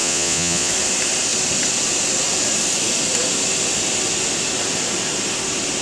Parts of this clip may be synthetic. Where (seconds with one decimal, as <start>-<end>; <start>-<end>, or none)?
0.0-0.7